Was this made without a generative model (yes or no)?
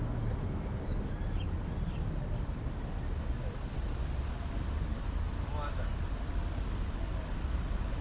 yes